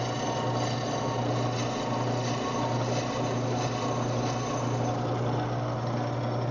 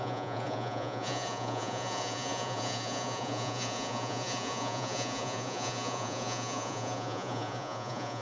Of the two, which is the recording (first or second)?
first